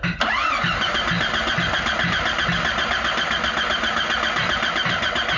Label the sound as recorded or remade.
recorded